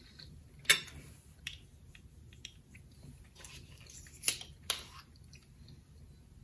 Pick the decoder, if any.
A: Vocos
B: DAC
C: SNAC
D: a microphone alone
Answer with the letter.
D